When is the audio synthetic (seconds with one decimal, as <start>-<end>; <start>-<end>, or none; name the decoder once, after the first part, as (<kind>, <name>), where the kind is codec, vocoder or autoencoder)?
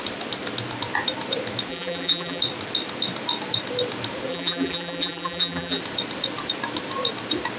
1.7-2.4 (vocoder, BigVGAN v2); 4.3-5.8